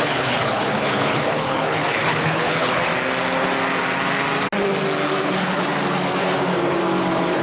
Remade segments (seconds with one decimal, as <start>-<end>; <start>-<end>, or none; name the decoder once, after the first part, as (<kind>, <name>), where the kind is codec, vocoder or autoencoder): 0.0-2.9 (codec, HILCodec); 5.2-5.7